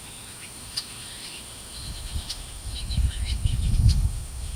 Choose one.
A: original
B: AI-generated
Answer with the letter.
B